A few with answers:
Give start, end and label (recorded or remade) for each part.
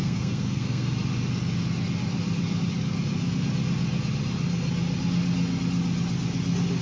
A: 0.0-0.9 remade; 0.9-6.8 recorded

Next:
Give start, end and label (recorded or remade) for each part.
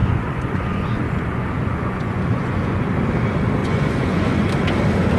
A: 0.0-2.9 remade; 2.9-3.6 recorded; 3.6-4.5 remade; 4.5-5.2 recorded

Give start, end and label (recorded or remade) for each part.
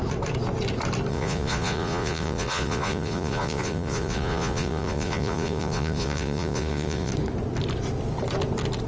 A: 0.0-1.1 recorded; 1.1-7.1 remade; 7.1-8.9 recorded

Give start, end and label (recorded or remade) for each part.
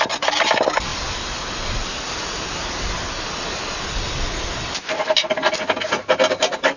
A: 0.0-0.9 recorded; 0.9-5.0 remade; 5.0-6.8 recorded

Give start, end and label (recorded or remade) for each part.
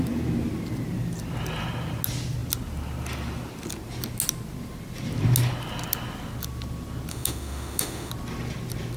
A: 0.0-7.1 recorded; 7.1-8.1 remade; 8.1-9.0 recorded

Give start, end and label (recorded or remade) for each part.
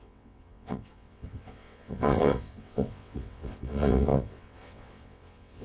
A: 0.0-5.6 remade